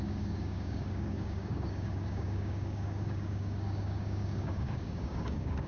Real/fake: fake